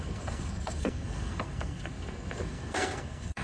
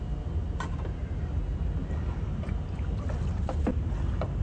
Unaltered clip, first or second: second